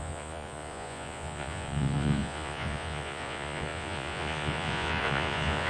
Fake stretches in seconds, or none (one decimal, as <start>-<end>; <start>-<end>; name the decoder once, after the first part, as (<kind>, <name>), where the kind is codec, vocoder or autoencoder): 0.0-5.7 (vocoder, Vocos)